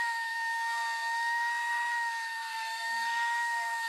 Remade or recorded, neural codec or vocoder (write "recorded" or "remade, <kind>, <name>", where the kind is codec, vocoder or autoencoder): remade, codec, SNAC